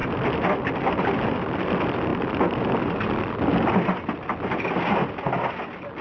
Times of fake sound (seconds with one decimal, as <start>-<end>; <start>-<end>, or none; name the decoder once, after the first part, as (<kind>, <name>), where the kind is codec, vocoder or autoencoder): none